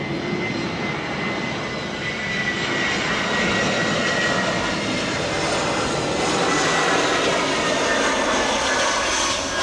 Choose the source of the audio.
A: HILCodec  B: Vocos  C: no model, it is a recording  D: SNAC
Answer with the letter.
C